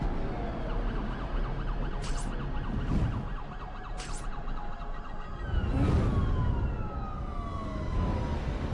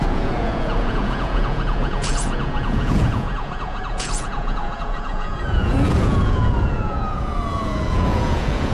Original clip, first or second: first